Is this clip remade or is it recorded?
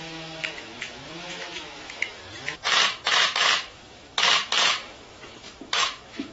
remade